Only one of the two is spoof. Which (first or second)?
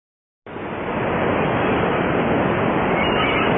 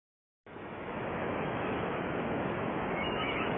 second